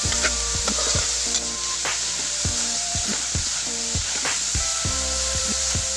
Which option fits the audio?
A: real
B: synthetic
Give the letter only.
B